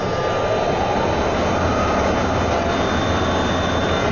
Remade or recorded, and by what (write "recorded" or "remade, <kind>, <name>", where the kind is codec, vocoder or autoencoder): recorded